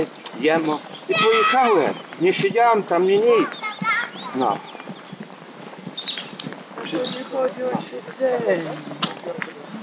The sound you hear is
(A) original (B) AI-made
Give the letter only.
A